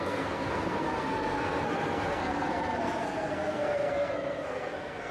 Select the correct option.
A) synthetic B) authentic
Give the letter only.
A